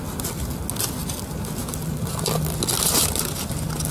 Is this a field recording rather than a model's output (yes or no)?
yes